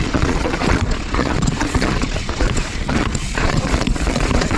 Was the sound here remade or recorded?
remade